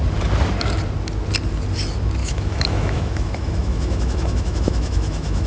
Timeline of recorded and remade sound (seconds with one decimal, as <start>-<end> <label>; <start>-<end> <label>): 0.0-2.2 recorded; 2.2-5.5 remade